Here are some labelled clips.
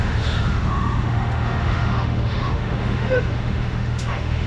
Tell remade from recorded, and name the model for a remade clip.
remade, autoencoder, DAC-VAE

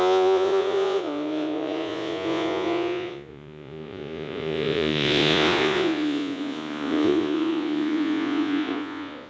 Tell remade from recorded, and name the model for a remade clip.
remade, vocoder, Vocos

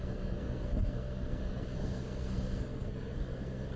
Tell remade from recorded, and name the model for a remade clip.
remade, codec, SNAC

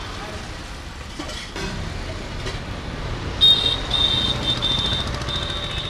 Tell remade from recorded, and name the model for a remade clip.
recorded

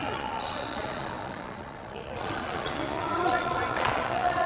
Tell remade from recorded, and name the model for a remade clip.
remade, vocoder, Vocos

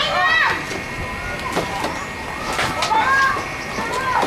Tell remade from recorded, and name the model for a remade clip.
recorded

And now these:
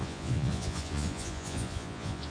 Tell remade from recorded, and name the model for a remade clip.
remade, vocoder, Vocos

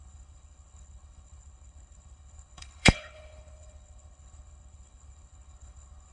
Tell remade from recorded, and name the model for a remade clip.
remade, codec, HILCodec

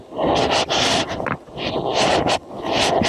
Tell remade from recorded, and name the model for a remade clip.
recorded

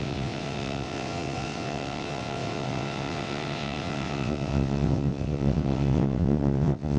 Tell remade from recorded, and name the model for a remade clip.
remade, vocoder, WaveNeXt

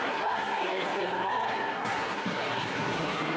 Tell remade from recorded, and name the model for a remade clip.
remade, codec, SNAC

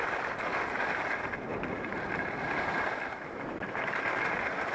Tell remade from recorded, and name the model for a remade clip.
recorded